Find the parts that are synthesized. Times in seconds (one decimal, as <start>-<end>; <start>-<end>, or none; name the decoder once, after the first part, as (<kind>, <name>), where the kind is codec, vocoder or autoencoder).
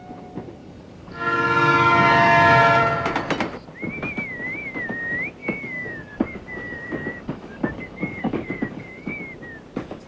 0.6-2.8 (codec, DAC); 5.4-9.2